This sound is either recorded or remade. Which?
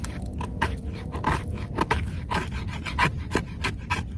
recorded